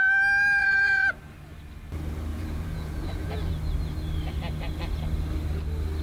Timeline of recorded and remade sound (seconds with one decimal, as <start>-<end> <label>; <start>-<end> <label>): 0.0-0.6 recorded; 0.6-1.1 remade; 1.1-2.3 recorded; 2.3-3.5 remade; 3.5-6.0 recorded